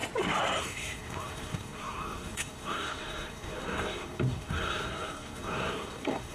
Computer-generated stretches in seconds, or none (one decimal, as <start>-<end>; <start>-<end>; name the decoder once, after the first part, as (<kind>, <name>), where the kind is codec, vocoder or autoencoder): 0.6-6.3 (codec, SNAC)